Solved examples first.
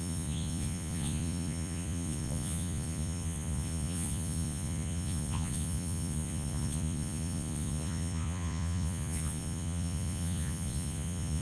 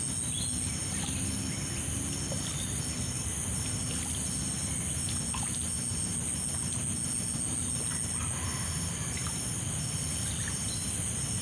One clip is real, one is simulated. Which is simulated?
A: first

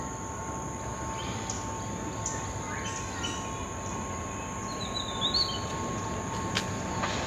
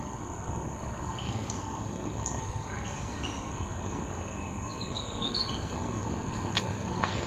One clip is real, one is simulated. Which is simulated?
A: second